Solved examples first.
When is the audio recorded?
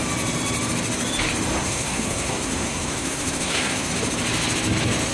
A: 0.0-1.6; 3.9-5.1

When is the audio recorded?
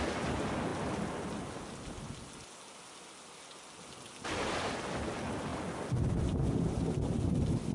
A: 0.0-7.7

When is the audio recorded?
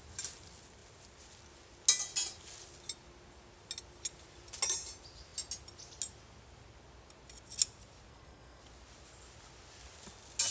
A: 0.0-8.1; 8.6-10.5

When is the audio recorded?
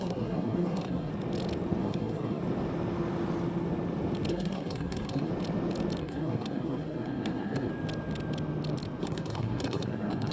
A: 1.1-1.8; 2.4-4.3; 5.3-6.0; 7.7-9.0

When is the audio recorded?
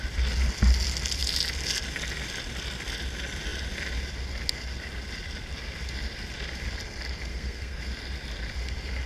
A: 0.0-7.3; 7.8-9.1